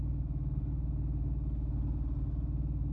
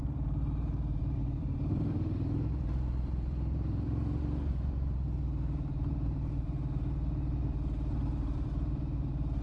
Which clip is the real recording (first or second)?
first